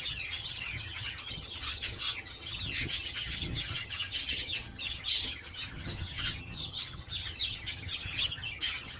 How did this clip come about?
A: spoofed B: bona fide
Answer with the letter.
A